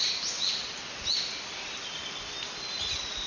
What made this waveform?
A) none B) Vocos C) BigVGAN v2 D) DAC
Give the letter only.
A